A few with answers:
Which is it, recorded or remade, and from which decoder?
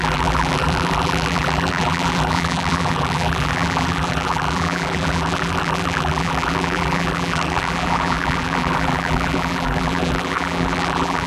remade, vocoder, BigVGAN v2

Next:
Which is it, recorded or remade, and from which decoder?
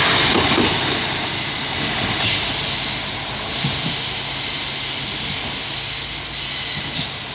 recorded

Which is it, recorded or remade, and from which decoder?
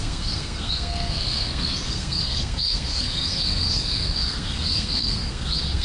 remade, codec, SNAC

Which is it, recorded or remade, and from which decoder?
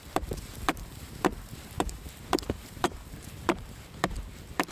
remade, vocoder, BigVGAN v2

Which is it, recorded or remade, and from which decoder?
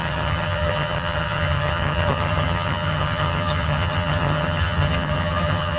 remade, vocoder, HiFi-GAN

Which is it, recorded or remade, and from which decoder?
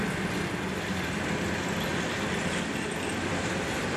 recorded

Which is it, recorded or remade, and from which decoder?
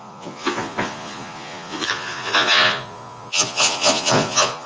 remade, vocoder, Vocos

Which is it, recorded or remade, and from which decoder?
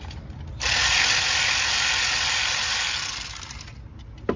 recorded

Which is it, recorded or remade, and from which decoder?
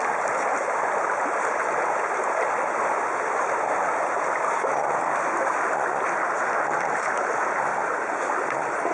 recorded